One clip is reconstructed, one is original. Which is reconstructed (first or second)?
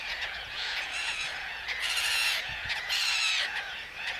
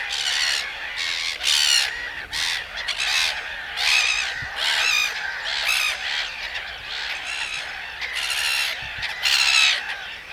first